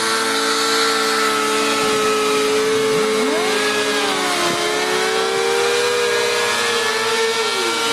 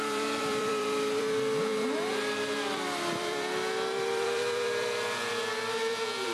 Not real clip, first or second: second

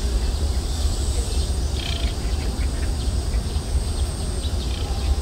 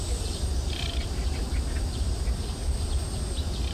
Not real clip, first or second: second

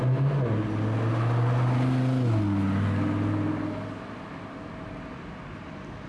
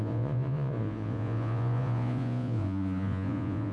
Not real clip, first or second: second